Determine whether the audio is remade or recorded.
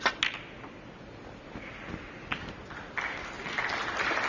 recorded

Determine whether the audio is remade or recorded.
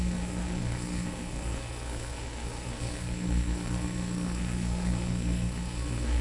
remade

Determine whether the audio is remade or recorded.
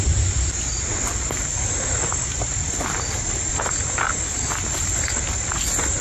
recorded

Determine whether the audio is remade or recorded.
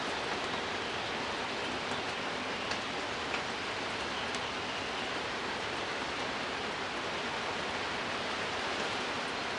recorded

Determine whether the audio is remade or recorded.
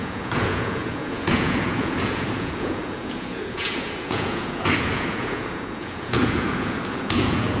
remade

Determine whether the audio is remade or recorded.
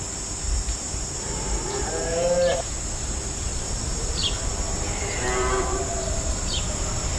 remade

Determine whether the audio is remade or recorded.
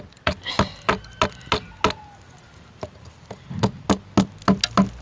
recorded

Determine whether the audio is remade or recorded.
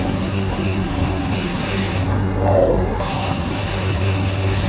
remade